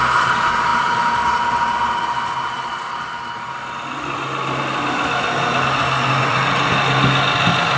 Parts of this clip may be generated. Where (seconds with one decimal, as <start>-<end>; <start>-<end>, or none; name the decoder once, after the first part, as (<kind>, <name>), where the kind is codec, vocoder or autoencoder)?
none